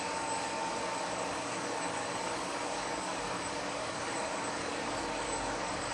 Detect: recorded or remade remade